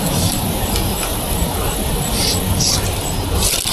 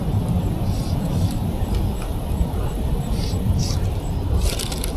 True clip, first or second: first